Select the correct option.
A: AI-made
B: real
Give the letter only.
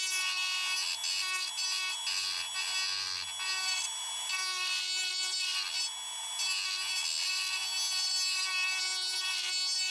B